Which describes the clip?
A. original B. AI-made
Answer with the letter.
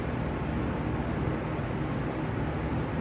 A